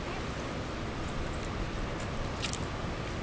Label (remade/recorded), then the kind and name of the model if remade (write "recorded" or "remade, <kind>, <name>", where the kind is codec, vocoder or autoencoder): recorded